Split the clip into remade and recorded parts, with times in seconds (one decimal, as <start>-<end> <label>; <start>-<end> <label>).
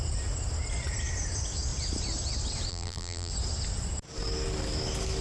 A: 0.0-2.7 recorded; 2.7-3.3 remade; 3.3-5.2 recorded